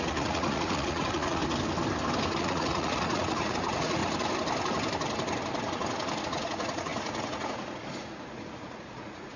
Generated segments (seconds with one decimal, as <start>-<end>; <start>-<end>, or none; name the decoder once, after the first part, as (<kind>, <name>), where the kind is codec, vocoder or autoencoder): 0.0-1.4 (vocoder, Vocos); 2.4-4.0; 6.2-9.4

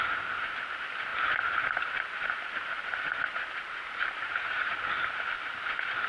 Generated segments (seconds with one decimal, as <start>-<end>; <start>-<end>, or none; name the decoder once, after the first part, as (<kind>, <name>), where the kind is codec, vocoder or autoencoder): 1.1-4.8 (vocoder, BigVGAN v2)

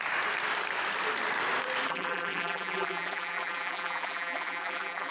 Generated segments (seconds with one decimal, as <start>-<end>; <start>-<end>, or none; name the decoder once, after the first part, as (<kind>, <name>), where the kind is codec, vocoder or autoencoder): 1.9-5.1 (vocoder, BigVGAN v2)